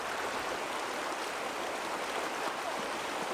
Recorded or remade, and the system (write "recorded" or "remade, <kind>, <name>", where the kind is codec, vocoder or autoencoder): recorded